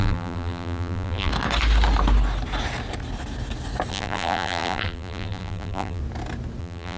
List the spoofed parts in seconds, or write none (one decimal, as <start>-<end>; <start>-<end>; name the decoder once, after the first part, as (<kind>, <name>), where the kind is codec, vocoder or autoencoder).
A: 0.0-1.3 (vocoder, BigVGAN v2); 3.9-6.0; 6.6-7.0